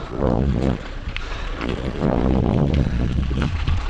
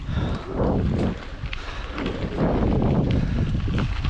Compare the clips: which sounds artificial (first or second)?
first